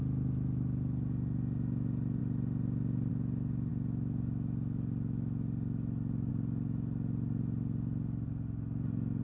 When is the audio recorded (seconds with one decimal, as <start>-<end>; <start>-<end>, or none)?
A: 0.0-9.2